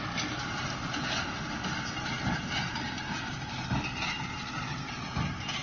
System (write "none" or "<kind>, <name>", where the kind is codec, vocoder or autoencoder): none